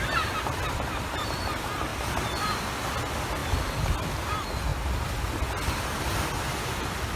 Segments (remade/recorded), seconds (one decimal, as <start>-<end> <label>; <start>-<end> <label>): 0.0-7.2 recorded